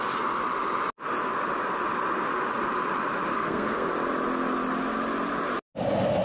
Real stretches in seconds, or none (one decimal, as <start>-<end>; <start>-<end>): 0.0-3.3; 3.9-6.2